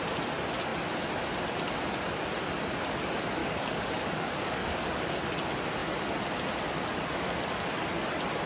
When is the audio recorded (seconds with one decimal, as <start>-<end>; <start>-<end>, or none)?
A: 0.0-3.4; 5.0-8.5